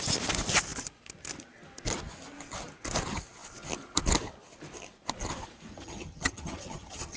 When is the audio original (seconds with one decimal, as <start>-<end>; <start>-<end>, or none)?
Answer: 0.0-5.7